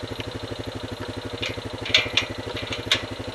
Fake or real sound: real